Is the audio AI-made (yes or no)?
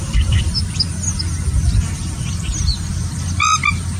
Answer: no